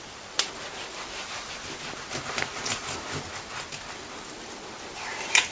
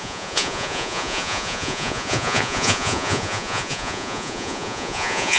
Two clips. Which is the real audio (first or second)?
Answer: first